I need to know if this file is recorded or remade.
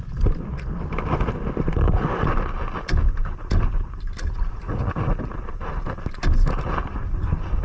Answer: recorded